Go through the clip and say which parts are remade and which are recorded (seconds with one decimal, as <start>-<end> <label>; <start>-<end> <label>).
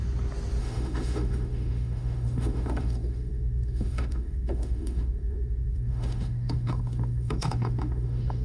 0.0-0.6 recorded; 0.6-8.4 remade